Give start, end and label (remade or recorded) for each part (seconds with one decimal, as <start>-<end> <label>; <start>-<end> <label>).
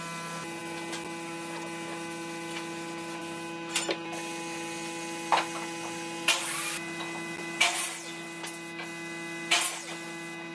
0.0-10.5 recorded